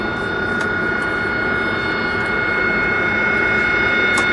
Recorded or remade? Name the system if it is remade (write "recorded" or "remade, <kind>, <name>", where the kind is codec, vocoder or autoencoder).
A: recorded